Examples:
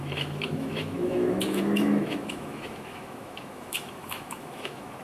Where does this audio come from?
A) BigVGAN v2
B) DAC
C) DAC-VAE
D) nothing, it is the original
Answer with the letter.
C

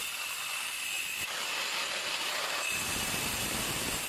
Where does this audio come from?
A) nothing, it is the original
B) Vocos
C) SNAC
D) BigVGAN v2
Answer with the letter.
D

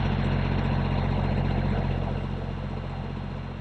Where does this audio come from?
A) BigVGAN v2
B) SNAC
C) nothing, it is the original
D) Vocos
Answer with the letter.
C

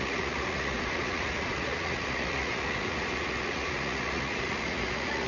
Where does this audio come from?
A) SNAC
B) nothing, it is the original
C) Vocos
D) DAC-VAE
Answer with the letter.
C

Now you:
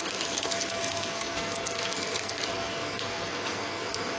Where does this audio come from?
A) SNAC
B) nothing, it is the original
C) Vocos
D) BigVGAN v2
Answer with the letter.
A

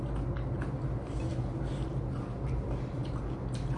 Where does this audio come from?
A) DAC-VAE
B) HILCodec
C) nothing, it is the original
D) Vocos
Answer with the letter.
C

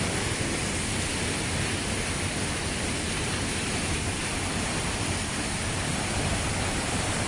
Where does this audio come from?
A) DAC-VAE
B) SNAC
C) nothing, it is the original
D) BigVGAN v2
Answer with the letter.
C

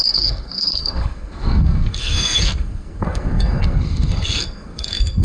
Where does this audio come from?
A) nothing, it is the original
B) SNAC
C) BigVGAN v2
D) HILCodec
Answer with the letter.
B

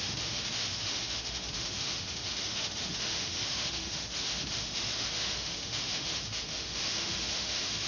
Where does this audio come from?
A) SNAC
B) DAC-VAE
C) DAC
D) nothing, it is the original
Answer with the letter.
B